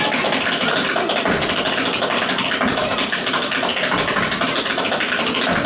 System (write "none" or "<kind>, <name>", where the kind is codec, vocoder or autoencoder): none